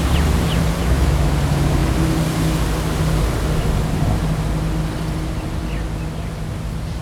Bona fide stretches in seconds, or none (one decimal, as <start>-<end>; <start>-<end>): 0.0-0.8; 1.3-7.0